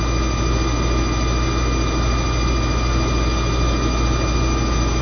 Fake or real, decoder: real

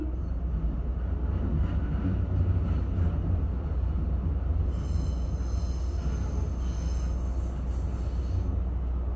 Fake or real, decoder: real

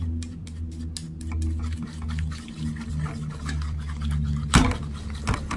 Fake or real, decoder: real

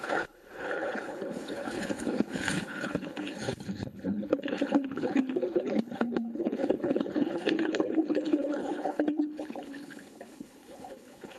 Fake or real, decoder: fake, codec, HILCodec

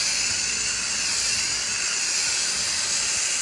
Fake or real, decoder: real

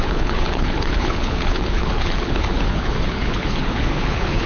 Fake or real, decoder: fake, codec, HILCodec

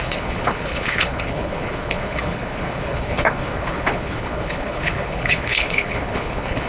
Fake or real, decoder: fake, codec, HILCodec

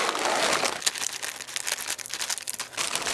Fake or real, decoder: real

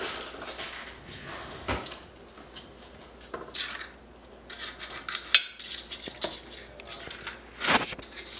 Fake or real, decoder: real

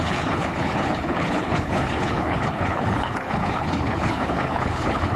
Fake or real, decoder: fake, codec, HILCodec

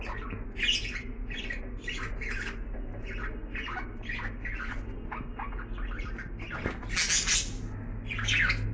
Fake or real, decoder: real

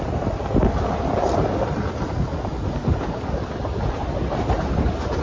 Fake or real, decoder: real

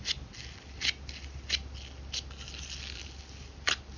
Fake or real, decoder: real